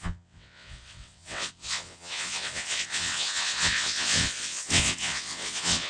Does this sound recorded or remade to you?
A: remade